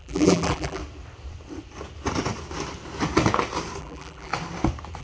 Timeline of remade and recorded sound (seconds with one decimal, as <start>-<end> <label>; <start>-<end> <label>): 0.0-0.8 remade; 0.8-3.8 recorded; 3.8-4.3 remade; 4.3-5.0 recorded